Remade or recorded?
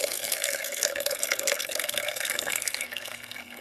remade